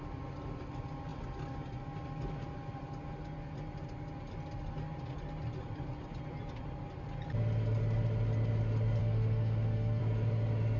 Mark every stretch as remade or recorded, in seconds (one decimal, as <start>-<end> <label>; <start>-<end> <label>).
0.0-9.0 recorded; 9.0-10.0 remade; 10.0-10.8 recorded